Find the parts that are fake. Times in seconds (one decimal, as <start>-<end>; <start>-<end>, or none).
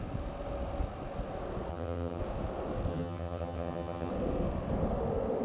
1.7-2.2; 2.9-4.1